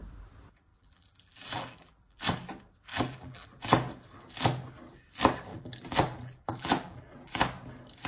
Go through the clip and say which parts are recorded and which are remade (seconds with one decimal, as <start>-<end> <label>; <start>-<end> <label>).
0.0-0.7 recorded; 0.7-2.2 remade; 2.2-2.9 recorded; 2.9-3.6 remade; 3.6-5.5 recorded; 5.5-7.4 remade; 7.4-8.1 recorded